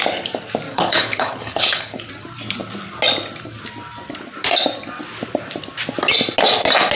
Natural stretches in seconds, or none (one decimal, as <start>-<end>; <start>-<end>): 0.0-0.7; 2.1-6.9